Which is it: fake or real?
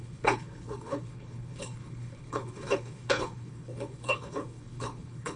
fake